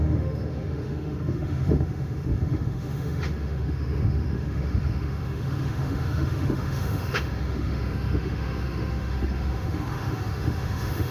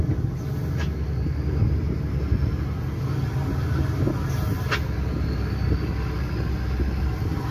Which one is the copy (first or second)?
first